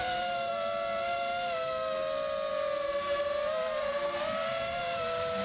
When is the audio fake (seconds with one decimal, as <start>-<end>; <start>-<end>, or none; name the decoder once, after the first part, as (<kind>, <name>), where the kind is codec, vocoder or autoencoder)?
0.0-0.5 (vocoder, BigVGAN v2); 2.5-5.4